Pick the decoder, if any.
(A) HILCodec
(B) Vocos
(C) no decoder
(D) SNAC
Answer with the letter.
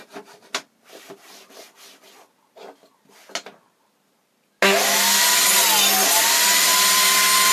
C